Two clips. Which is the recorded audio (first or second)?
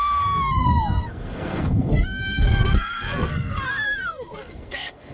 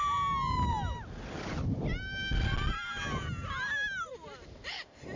second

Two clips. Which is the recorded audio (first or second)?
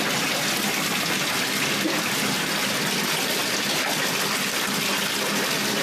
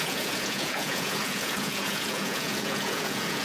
first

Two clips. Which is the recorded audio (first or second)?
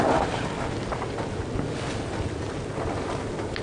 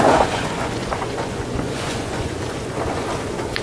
first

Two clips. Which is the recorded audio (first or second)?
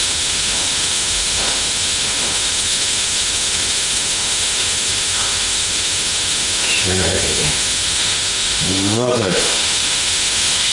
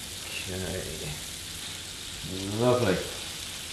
second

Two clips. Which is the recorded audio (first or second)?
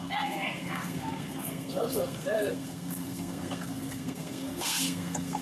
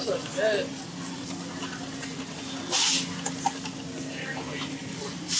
second